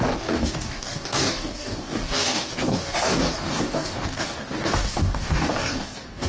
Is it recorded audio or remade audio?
remade